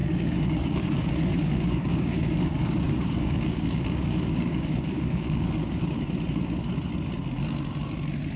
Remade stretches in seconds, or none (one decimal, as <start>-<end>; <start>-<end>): 0.0-0.9; 1.3-6.0